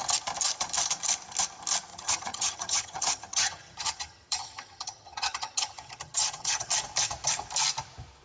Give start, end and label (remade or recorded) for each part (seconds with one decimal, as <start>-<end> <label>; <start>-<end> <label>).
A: 0.0-1.9 recorded; 1.9-6.7 remade; 6.7-8.2 recorded